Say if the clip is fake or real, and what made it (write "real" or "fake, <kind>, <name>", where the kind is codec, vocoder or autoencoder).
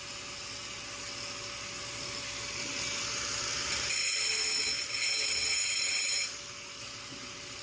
real